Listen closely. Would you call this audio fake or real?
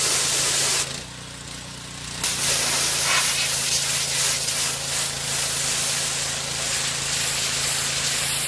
real